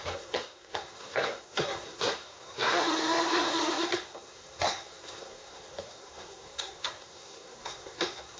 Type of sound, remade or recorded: remade